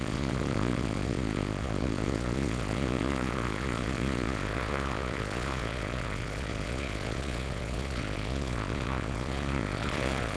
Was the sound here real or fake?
fake